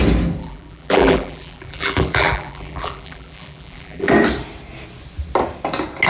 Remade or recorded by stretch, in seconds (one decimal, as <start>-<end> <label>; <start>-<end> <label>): 0.0-0.4 recorded; 0.4-4.1 remade; 4.1-6.1 recorded